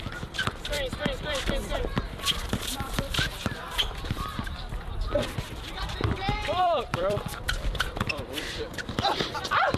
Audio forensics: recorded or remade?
remade